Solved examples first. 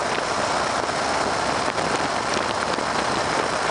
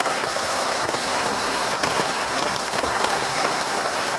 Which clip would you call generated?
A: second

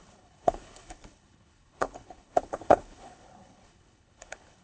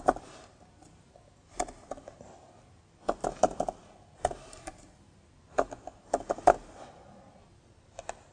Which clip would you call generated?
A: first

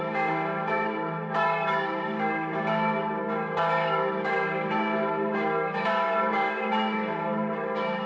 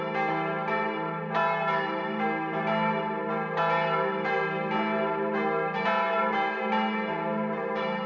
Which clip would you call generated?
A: first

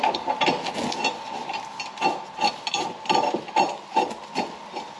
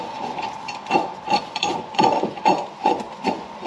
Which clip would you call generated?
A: second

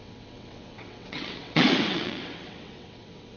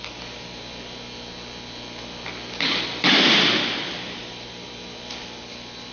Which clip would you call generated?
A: first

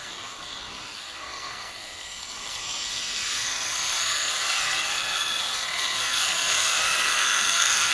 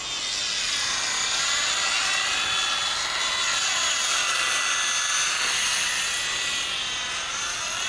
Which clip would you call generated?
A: first